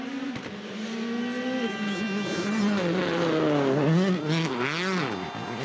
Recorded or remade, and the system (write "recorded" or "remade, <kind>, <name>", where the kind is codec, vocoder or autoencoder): recorded